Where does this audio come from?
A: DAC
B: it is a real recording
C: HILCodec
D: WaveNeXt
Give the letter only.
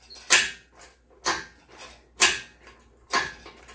B